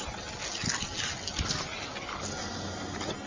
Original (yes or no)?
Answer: yes